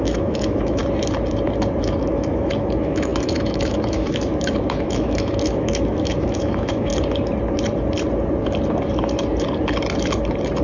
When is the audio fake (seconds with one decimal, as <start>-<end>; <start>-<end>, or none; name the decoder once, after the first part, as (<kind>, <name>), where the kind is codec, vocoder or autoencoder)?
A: 0.0-0.8 (autoencoder, DAC-VAE); 2.0-6.9